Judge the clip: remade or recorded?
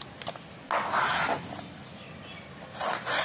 recorded